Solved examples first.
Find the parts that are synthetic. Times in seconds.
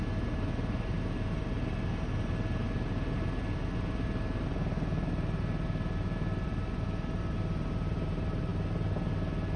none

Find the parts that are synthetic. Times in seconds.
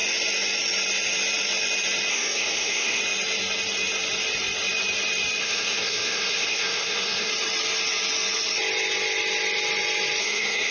2.1-3.0 (codec, SNAC); 5.4-7.3; 10.2-10.7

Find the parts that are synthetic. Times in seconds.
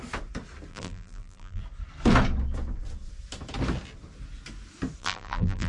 0.7-1.6 (vocoder, BigVGAN v2); 5.0-5.7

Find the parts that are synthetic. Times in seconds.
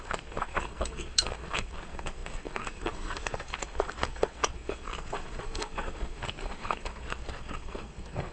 0.0-8.3 (codec, SNAC)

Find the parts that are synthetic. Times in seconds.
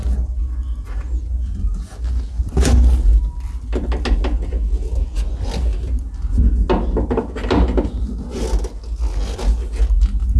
none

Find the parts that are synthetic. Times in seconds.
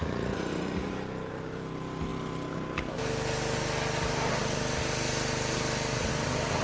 0.0-0.9 (vocoder, Vocos)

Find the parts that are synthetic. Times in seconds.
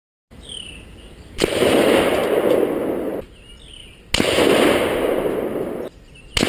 none